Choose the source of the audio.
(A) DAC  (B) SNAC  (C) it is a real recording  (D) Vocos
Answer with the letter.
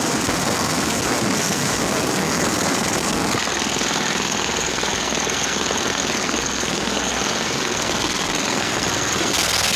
B